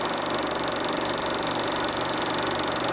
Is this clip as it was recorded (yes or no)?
yes